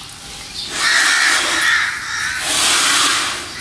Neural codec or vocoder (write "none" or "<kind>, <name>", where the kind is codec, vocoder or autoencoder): none